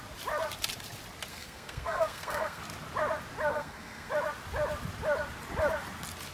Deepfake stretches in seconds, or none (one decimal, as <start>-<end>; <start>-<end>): 1.3-2.6; 3.5-4.1